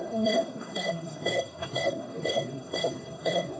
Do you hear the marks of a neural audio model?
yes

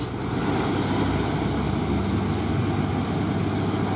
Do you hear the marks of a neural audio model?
no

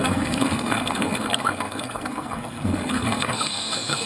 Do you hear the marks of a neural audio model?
yes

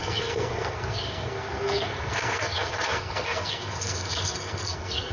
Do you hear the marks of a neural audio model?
yes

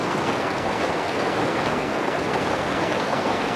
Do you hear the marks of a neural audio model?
yes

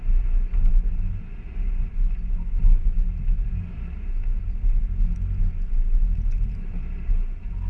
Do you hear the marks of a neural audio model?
no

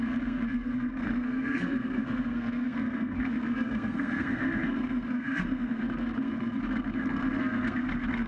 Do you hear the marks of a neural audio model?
yes